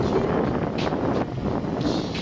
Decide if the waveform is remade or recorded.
recorded